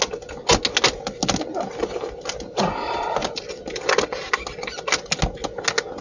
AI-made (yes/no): no